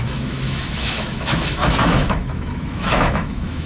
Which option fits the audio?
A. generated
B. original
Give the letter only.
A